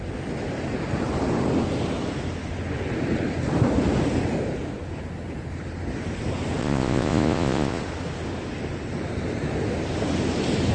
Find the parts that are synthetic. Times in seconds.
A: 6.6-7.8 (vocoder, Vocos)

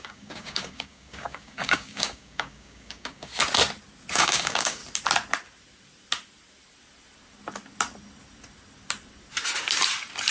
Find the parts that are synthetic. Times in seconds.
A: 0.0-3.3 (codec, DAC); 4.1-4.8

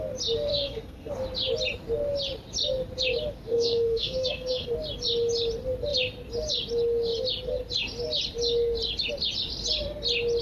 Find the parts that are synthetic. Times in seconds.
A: 0.5-1.1 (codec, SNAC); 3.5-4.7

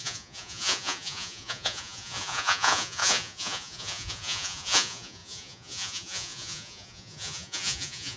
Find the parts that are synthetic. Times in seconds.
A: 0.0-8.2 (vocoder, Vocos)

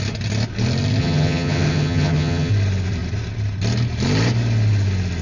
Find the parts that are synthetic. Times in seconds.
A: 1.0-2.5 (vocoder, HiFi-GAN)

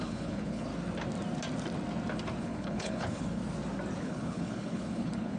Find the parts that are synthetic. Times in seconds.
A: 0.0-0.7 (codec, HILCodec); 2.4-3.4; 4.0-5.4